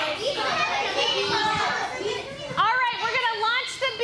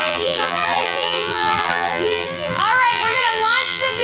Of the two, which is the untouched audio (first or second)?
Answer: first